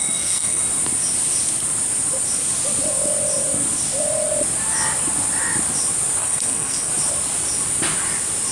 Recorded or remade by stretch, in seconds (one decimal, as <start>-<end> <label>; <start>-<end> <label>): 0.0-0.6 remade; 0.6-6.2 recorded; 6.2-6.9 remade; 6.9-8.5 recorded